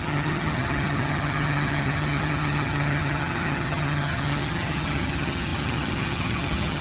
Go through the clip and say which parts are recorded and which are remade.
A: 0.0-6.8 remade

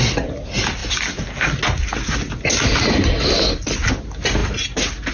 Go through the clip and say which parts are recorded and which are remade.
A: 0.0-5.1 recorded

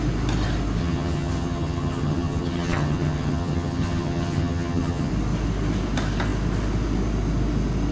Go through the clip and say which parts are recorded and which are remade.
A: 0.0-0.8 recorded; 0.8-5.1 remade; 5.1-7.9 recorded

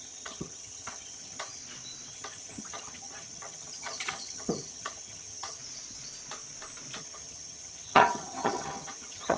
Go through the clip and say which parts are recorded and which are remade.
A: 0.0-1.6 remade; 1.6-2.1 recorded; 2.1-5.6 remade; 5.6-7.0 recorded; 7.0-9.4 remade

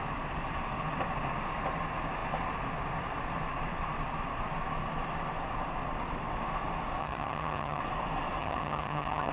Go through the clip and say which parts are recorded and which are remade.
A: 0.0-7.0 recorded; 7.0-7.8 remade; 7.8-8.4 recorded; 8.4-9.3 remade

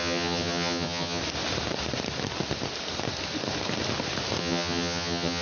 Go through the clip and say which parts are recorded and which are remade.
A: 0.0-1.2 remade; 1.2-4.4 recorded; 4.4-5.4 remade